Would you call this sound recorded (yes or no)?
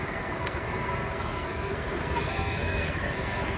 no